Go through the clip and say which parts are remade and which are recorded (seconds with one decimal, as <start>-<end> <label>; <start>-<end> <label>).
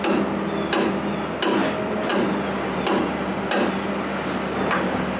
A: 0.0-5.2 recorded